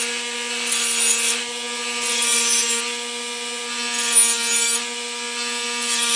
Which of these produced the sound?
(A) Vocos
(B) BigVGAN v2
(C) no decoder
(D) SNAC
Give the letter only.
C